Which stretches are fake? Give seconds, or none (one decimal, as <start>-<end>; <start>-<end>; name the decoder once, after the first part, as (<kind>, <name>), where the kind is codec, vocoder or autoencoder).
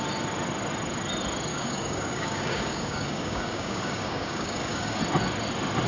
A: 1.5-5.0 (codec, DAC)